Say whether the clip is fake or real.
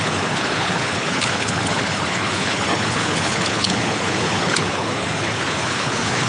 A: fake